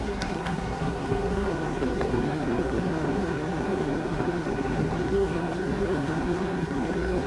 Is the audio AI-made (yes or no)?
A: yes